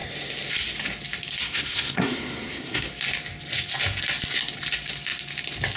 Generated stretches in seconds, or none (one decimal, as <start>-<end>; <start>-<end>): 1.4-2.9

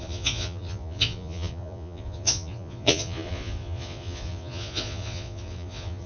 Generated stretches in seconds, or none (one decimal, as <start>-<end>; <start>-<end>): 0.0-6.1

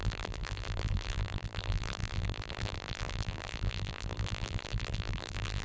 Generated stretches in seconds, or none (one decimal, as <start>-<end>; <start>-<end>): 0.0-5.6

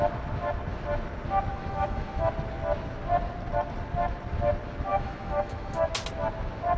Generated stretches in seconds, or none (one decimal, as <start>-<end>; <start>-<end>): 1.5-2.3; 4.9-5.9

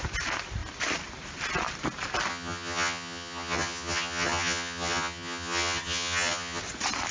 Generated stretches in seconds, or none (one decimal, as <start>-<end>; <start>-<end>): 2.3-6.6

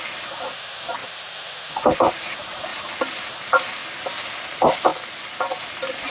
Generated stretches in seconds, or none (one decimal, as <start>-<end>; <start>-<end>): 0.0-1.0; 1.6-2.7; 3.4-3.8; 4.5-4.9; 5.6-6.1

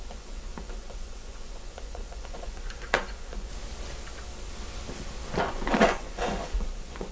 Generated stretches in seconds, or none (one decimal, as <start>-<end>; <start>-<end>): 0.0-3.5; 5.4-7.1

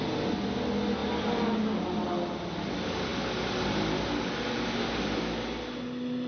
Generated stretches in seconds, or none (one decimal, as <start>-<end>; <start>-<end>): none